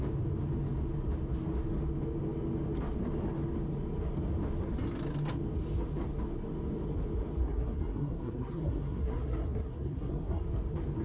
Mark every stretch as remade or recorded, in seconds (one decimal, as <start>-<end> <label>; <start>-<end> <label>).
0.0-7.4 recorded; 7.4-10.4 remade; 10.4-11.0 recorded